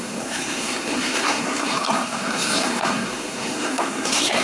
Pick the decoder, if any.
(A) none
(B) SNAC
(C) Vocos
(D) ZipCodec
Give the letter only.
B